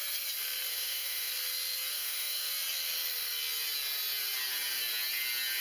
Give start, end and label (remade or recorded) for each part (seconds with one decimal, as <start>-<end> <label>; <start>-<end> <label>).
0.0-0.7 recorded; 0.7-1.3 remade; 1.3-1.9 recorded; 1.9-2.5 remade; 2.5-5.6 recorded